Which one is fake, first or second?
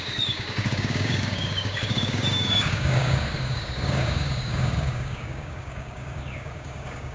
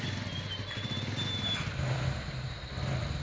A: first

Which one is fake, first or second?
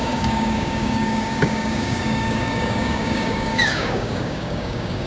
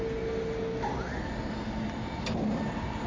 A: first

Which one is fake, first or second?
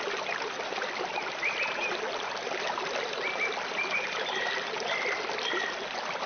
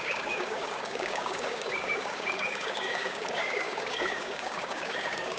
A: second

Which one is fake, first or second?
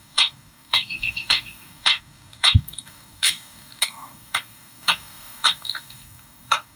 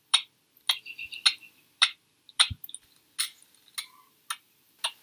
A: first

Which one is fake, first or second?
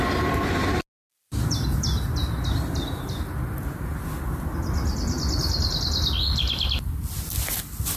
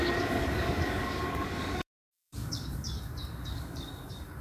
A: second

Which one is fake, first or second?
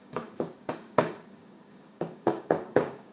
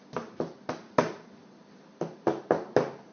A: first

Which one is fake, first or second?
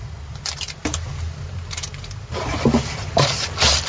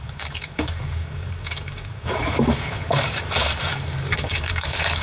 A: second